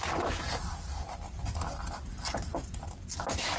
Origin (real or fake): real